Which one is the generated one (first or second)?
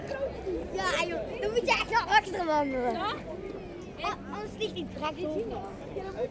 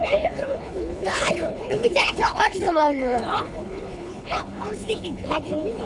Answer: second